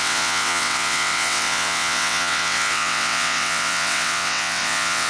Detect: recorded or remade remade